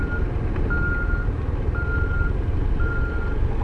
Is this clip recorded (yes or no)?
yes